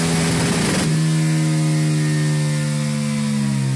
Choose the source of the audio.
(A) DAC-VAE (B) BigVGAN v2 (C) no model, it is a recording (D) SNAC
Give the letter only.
C